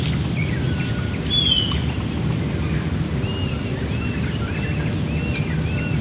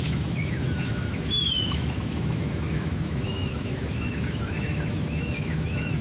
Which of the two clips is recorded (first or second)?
first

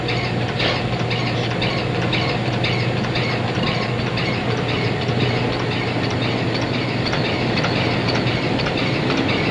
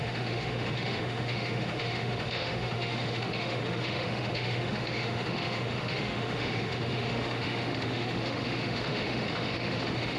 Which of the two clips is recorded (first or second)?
first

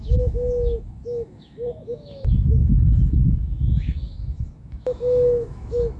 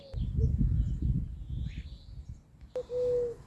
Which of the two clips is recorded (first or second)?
second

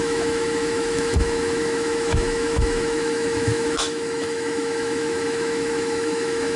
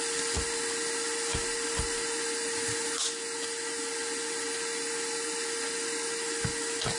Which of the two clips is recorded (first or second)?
second